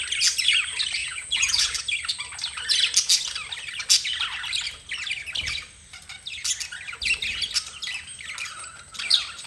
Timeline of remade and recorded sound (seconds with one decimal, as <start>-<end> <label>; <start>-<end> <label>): 0.0-1.0 recorded; 1.0-1.8 remade; 1.8-9.5 recorded